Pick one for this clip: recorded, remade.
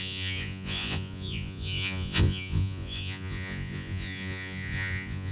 remade